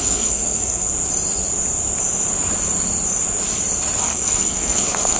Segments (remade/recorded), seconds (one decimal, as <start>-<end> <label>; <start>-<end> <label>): 0.0-0.9 remade; 0.9-4.0 recorded; 4.0-5.2 remade